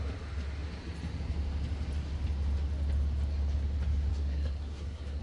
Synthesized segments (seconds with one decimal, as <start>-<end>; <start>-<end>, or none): 4.1-5.2